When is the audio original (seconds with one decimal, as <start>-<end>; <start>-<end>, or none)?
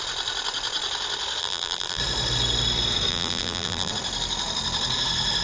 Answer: 0.0-1.4; 2.0-3.1; 3.9-5.4